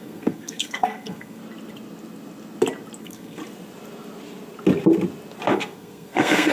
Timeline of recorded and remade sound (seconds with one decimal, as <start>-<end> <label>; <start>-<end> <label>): 0.0-1.4 remade; 1.4-3.0 recorded; 3.0-3.4 remade; 3.4-5.5 recorded; 5.5-6.5 remade